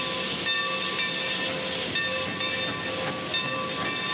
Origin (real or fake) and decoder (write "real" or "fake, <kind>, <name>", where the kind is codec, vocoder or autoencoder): real